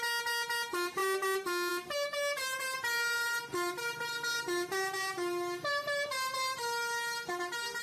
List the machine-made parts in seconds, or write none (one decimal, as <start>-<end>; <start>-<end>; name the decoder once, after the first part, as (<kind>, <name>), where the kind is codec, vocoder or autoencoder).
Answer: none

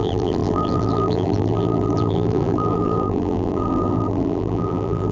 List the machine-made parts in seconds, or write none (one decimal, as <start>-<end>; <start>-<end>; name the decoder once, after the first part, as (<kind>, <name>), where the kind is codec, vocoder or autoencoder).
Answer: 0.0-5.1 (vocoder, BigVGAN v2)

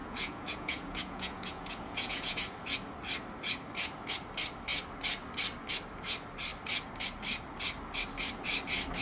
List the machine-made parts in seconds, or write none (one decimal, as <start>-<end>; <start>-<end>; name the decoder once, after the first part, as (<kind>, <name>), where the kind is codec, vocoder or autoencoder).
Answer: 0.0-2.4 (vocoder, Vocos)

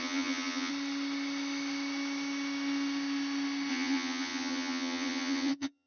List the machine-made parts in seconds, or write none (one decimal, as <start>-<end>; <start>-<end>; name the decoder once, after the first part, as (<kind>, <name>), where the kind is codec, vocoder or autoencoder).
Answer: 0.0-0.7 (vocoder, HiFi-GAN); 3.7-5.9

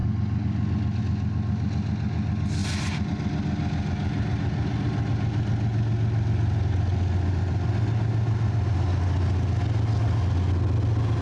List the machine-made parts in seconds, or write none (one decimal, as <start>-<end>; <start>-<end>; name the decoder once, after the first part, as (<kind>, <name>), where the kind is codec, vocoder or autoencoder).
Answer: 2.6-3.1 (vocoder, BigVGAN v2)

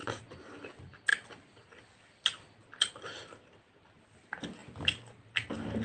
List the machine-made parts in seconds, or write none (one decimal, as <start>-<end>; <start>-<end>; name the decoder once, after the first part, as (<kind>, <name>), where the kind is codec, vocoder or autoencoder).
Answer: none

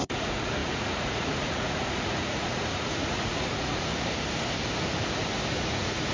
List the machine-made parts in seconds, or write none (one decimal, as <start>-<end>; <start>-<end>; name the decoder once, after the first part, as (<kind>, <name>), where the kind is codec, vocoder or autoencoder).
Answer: 0.0-3.9 (vocoder, Vocos); 5.5-6.1

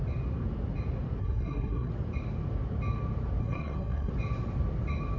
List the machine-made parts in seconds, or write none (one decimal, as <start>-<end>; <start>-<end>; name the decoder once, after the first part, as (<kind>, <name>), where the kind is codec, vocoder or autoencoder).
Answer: 1.2-1.9 (codec, SNAC); 3.4-4.1